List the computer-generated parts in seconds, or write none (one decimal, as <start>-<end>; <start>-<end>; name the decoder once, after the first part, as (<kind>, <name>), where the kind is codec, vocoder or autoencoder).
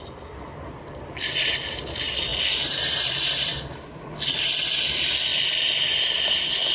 none